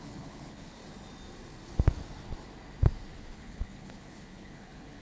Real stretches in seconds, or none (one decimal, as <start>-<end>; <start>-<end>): 0.8-3.2